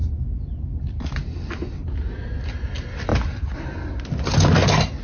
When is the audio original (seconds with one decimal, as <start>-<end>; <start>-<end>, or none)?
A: 0.0-5.0